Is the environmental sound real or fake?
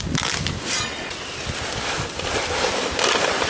real